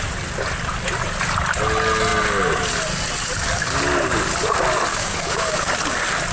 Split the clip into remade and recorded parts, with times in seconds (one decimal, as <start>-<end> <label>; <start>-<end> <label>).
0.0-4.9 recorded; 4.9-5.7 remade; 5.7-6.3 recorded

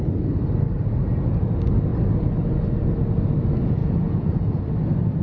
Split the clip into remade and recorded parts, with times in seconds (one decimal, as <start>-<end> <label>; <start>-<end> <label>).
0.0-3.8 recorded; 3.8-4.6 remade; 4.6-5.2 recorded

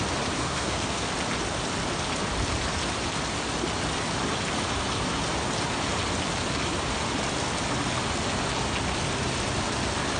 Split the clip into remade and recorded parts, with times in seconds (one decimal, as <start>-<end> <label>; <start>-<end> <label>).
0.0-0.4 recorded; 0.4-1.1 remade; 1.1-10.2 recorded